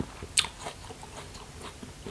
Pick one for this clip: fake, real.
real